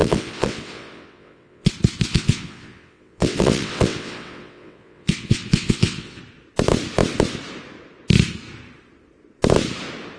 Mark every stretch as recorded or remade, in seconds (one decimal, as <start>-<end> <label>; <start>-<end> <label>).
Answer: 0.0-1.7 remade; 1.7-2.1 recorded; 2.1-6.2 remade; 6.2-10.2 recorded